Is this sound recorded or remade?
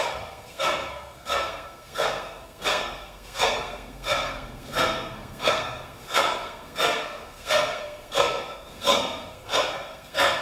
remade